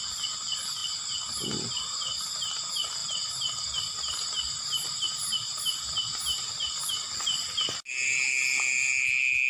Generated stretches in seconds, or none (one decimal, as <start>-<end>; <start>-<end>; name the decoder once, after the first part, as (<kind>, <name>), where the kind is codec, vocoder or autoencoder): none